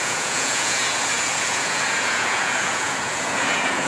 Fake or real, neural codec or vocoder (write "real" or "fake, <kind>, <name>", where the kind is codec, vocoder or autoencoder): fake, vocoder, Vocos